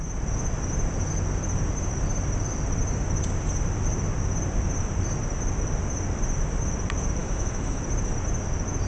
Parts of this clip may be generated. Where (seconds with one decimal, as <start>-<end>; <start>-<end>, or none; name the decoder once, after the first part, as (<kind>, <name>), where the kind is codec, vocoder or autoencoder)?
7.2-7.8 (autoencoder, DAC-VAE)